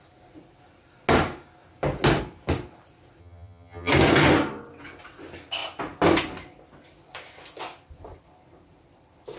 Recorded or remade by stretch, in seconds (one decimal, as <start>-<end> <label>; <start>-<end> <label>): 0.0-3.2 recorded; 3.2-3.9 remade; 3.9-9.4 recorded